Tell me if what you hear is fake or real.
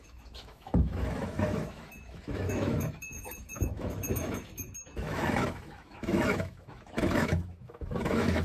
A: fake